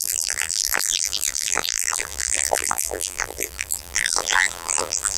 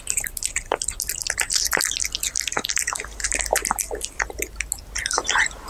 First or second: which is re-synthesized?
first